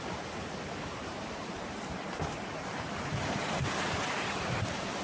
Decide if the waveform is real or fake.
fake